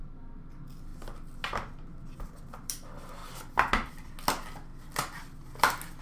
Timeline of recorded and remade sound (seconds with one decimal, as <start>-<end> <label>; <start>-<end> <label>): 0.0-6.0 recorded